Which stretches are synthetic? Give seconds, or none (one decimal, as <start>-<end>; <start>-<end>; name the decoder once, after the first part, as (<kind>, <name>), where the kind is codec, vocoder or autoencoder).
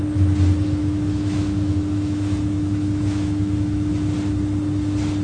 0.8-3.9 (autoencoder, DAC-VAE)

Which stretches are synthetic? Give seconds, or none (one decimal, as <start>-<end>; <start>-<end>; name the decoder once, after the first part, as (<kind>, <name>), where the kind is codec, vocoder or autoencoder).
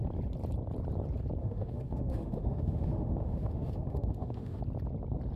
1.4-4.6 (autoencoder, DAC-VAE)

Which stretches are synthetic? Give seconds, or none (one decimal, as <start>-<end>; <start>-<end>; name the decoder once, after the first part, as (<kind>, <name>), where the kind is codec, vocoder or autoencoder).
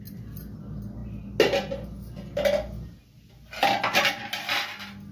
none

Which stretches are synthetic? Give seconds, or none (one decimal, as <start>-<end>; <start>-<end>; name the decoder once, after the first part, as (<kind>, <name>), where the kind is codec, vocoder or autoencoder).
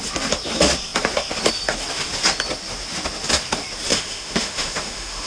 3.9-5.3 (autoencoder, DAC-VAE)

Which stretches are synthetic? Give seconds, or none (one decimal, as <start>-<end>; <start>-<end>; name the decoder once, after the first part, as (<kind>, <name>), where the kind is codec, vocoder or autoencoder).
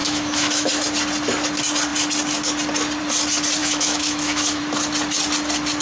0.0-0.7 (autoencoder, DAC-VAE); 3.6-4.6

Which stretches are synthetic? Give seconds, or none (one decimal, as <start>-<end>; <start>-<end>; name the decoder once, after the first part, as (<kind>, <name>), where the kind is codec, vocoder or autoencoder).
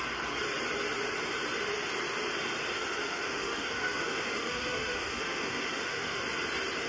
2.7-6.2 (autoencoder, DAC-VAE)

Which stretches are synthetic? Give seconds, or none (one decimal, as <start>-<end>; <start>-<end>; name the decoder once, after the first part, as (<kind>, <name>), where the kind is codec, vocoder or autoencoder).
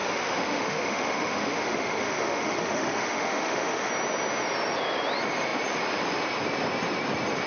0.0-3.9 (autoencoder, DAC-VAE)